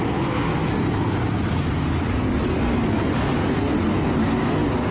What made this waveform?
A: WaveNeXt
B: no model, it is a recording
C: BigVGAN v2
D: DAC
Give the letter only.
B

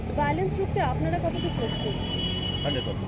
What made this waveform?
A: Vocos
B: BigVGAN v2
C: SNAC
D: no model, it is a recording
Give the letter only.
D